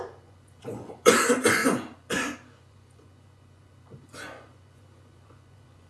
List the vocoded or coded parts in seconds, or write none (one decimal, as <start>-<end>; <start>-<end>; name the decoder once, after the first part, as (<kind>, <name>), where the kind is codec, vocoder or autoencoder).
0.0-5.9 (vocoder, Vocos)